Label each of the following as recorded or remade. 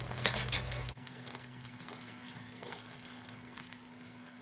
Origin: remade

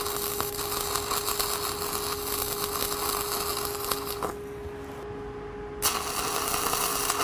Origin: recorded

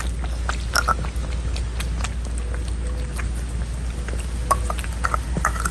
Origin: recorded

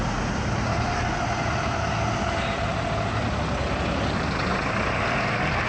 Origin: recorded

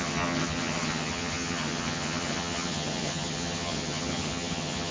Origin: remade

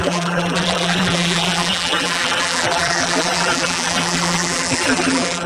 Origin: remade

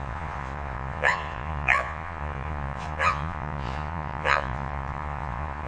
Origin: remade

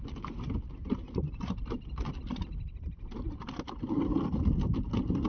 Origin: recorded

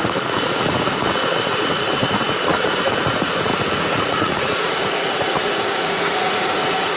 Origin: remade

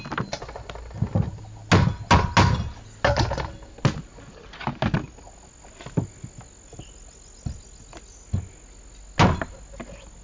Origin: recorded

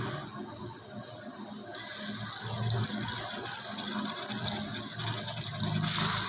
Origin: recorded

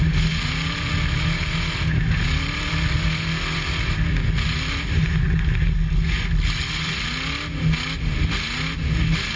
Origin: recorded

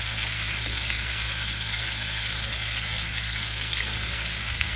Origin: remade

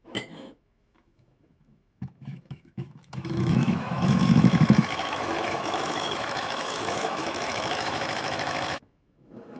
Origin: remade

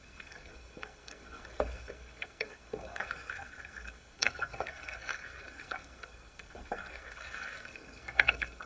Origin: remade